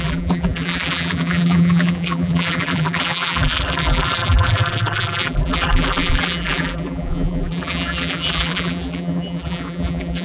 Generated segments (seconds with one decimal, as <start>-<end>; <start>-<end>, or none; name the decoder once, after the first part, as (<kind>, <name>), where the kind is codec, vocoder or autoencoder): 0.0-10.2 (vocoder, BigVGAN v2)